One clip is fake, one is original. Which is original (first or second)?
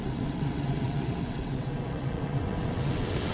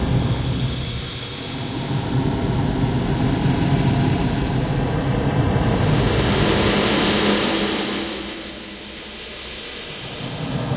second